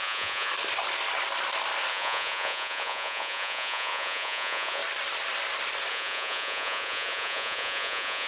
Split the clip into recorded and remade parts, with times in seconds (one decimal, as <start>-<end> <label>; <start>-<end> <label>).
0.0-0.5 remade; 0.5-1.9 recorded; 1.9-4.8 remade; 4.8-5.9 recorded; 5.9-8.3 remade